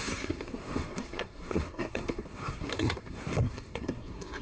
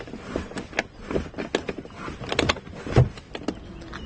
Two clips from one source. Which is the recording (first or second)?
second